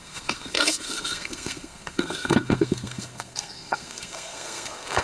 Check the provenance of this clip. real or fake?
fake